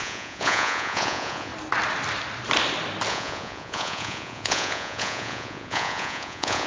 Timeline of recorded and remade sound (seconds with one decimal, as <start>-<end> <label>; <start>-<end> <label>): 0.0-1.5 remade; 1.5-3.1 recorded; 3.1-6.7 remade